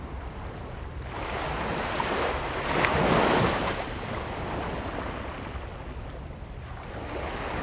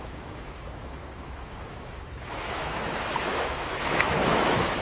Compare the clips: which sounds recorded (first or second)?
first